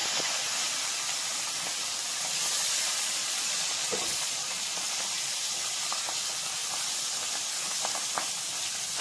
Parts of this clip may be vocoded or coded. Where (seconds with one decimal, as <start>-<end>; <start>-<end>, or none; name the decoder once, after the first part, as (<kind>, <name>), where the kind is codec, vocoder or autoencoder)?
3.2-5.0 (vocoder, Vocos)

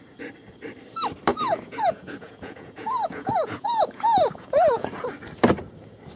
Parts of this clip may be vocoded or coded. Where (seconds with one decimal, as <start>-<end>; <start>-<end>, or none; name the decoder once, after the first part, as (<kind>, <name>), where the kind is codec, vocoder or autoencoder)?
1.3-5.0 (vocoder, Vocos)

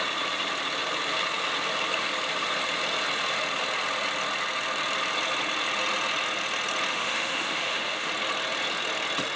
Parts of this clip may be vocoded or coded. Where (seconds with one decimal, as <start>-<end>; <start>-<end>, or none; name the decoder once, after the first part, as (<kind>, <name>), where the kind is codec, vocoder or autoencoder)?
6.9-8.1 (autoencoder, DAC-VAE)

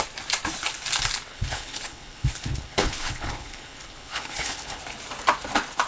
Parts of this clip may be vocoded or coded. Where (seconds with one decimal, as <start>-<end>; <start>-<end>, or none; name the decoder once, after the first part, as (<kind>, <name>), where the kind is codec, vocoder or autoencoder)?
1.3-4.8 (codec, HILCodec)

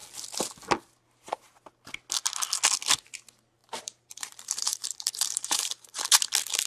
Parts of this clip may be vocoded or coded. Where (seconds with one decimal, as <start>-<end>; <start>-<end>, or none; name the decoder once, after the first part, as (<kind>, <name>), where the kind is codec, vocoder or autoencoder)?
3.6-6.0 (vocoder, BigVGAN v2)

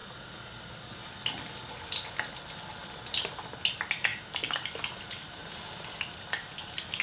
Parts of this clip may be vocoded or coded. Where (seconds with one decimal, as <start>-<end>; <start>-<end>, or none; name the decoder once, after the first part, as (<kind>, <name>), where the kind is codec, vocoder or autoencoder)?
none

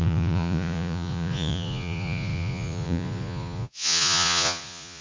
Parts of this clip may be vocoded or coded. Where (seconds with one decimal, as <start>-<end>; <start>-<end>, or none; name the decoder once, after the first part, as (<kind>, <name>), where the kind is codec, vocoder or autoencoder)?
0.0-5.0 (vocoder, Vocos)